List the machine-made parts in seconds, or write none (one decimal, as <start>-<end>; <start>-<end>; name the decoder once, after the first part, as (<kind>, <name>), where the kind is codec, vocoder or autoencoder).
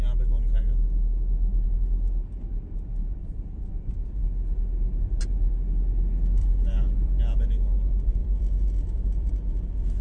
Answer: 3.2-3.7 (vocoder, BigVGAN v2); 6.4-7.2; 8.2-9.3